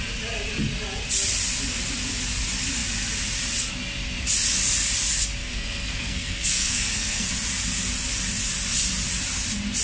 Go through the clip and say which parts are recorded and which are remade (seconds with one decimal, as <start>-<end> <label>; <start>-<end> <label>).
0.0-5.4 recorded; 5.4-7.3 remade; 7.3-9.8 recorded